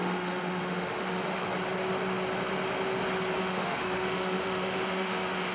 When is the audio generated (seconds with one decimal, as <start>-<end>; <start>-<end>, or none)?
0.0-1.5; 3.4-5.5

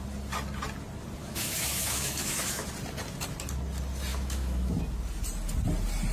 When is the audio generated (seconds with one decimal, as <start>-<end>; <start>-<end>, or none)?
1.2-2.7; 4.1-4.7

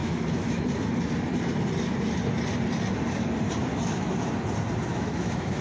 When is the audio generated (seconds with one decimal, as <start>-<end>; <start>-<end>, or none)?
0.0-0.6; 3.7-4.3; 4.9-5.6

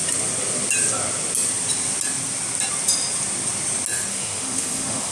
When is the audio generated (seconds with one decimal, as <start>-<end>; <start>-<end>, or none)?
4.1-5.1

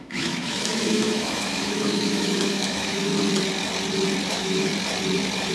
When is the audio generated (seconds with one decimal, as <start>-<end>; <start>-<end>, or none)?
0.0-3.1; 4.3-4.7

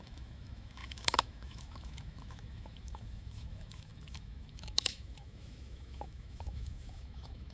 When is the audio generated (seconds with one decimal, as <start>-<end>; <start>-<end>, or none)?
0.0-7.5

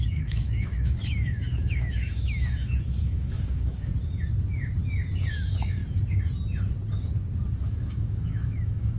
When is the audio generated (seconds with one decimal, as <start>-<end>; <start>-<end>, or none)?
0.0-3.9; 5.3-5.8; 7.6-9.0

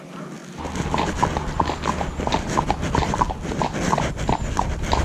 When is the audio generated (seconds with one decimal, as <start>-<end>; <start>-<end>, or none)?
none